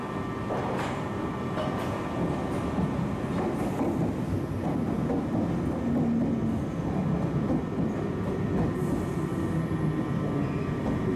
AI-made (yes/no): no